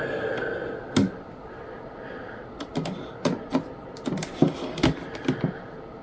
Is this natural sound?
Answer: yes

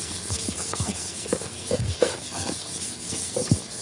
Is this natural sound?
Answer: no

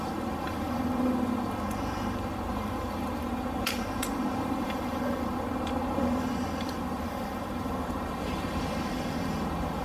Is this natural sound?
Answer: no